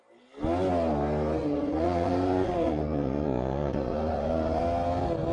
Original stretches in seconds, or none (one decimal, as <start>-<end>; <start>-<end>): 0.0-1.4; 4.6-5.3